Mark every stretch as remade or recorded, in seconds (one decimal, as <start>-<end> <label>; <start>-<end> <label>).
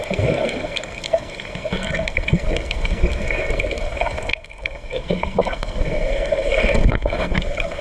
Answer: 0.0-7.8 remade